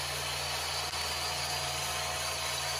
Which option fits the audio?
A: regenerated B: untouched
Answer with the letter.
B